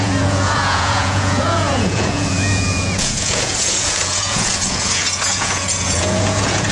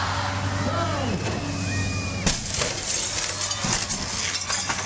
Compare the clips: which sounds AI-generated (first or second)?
first